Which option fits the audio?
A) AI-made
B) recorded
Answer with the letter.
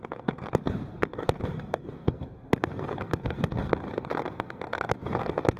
A